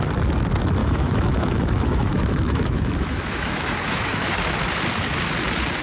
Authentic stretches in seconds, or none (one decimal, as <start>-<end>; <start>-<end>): 0.0-0.8; 4.3-5.8